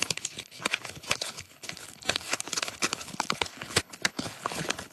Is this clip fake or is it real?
fake